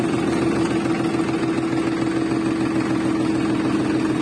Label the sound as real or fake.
real